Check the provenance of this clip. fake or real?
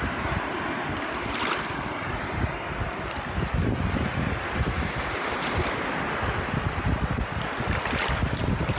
real